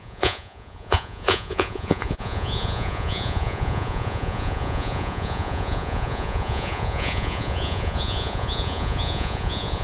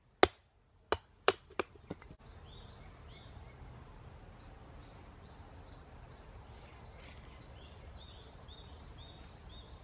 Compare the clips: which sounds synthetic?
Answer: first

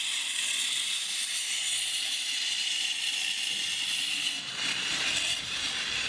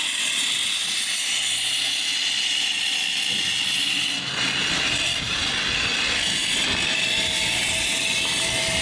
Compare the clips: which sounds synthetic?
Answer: first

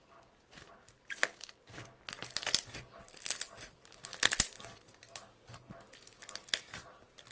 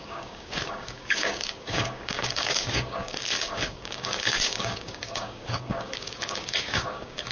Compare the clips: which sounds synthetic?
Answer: second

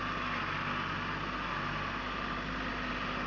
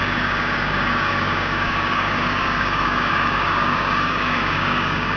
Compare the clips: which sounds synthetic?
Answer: second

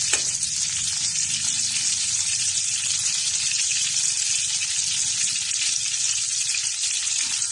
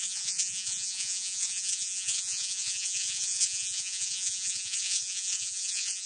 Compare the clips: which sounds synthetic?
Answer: second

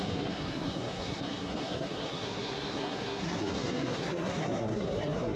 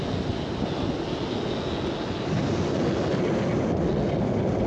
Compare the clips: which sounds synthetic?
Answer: first